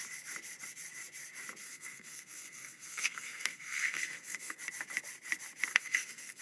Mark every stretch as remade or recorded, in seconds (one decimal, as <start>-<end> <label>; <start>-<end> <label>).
0.0-1.6 recorded; 1.6-4.6 remade; 4.6-5.7 recorded; 5.7-6.4 remade